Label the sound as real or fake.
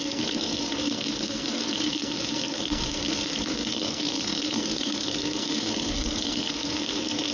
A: fake